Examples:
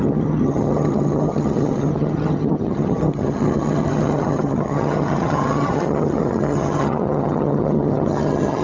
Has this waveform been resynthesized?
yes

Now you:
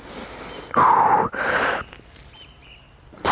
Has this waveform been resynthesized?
no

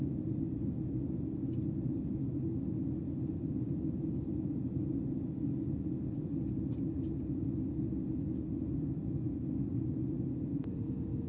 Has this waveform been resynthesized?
no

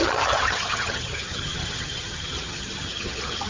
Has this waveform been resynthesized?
yes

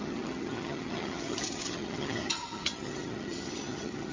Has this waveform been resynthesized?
yes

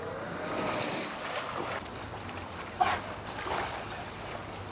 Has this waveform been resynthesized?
no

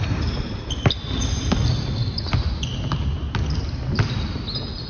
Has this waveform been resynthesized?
no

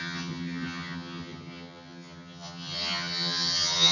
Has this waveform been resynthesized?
yes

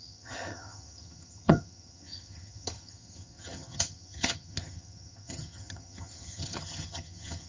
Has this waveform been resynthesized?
yes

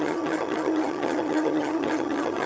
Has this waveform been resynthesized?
yes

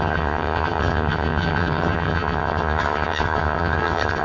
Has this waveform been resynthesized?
yes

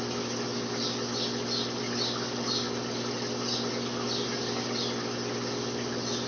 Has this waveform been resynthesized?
no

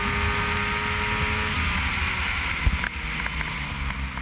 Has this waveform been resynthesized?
no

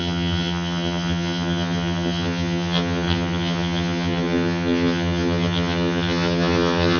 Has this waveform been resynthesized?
yes